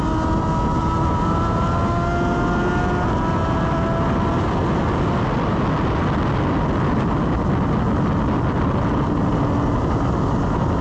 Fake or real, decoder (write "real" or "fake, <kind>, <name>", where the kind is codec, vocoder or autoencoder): real